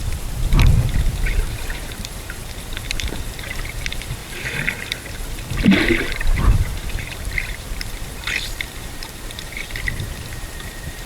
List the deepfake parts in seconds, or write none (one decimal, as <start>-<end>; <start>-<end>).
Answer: 0.0-4.2; 6.0-11.1